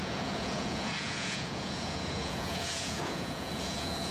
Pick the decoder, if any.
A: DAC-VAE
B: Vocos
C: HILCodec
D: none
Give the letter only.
B